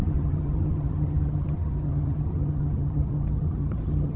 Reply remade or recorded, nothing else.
remade